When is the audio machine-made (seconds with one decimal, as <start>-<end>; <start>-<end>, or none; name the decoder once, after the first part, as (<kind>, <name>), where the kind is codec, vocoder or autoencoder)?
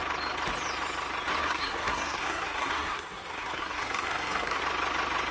1.4-4.6 (codec, SNAC)